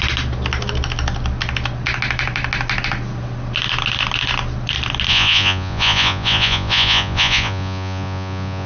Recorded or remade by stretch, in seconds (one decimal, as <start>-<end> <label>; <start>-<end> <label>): 0.0-5.1 recorded; 5.1-8.7 remade